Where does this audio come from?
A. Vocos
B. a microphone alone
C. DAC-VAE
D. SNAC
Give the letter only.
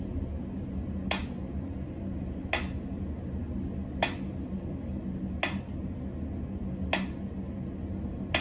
B